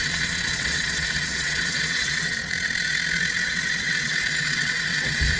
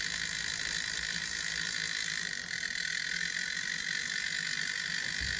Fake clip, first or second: first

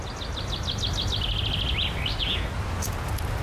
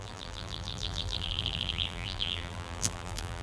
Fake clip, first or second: second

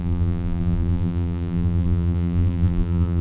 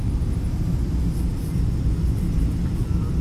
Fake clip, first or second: first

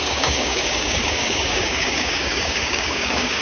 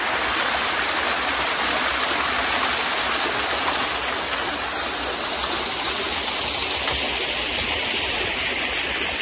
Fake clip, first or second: first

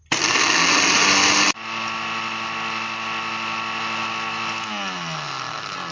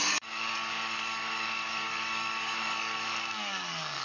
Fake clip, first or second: second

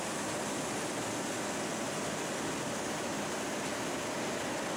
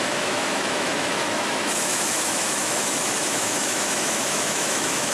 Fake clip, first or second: second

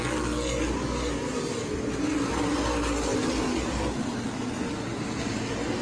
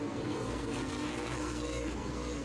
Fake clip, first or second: second